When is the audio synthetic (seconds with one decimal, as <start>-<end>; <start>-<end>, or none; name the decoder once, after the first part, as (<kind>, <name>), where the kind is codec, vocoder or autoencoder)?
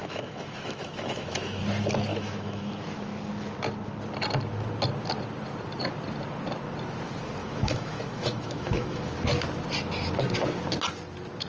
0.0-1.6 (autoencoder, DAC-VAE); 2.1-2.7; 7.4-9.1